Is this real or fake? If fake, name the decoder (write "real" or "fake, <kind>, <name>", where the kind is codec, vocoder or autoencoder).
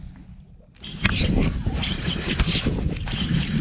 real